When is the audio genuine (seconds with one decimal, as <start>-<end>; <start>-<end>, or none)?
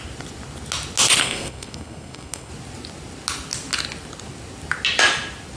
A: 0.0-1.2; 2.5-5.6